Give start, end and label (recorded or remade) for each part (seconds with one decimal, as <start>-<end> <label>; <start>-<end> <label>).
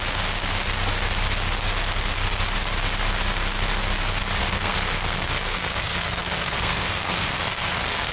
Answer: 0.0-4.4 recorded; 4.4-8.1 remade